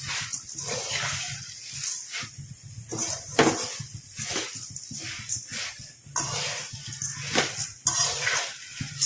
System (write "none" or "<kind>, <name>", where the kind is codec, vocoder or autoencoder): none